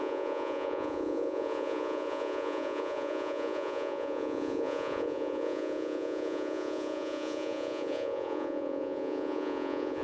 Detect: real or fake fake